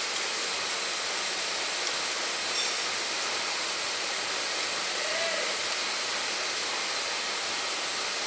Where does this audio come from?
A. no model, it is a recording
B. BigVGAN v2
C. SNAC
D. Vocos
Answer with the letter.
A